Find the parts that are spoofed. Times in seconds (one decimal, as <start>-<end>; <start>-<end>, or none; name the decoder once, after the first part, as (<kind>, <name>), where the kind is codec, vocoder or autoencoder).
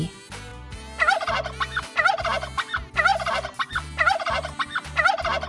none